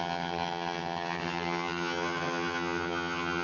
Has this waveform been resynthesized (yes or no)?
yes